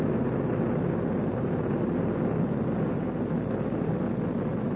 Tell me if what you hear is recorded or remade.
recorded